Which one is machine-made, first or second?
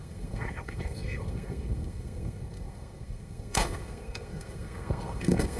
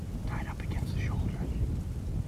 first